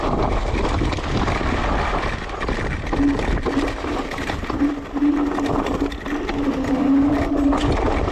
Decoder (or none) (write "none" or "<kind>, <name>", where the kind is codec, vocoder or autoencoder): none